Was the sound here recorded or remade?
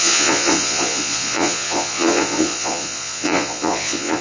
remade